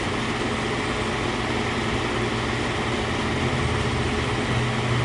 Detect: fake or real real